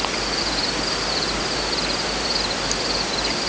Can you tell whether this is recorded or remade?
recorded